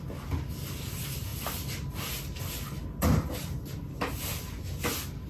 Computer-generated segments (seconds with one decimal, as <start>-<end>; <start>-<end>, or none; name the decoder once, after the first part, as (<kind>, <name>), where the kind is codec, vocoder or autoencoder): none